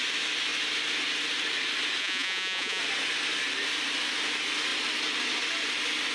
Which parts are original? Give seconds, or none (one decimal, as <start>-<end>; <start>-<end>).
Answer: 0.0-2.0; 2.8-6.1